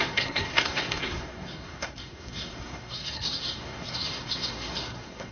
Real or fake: fake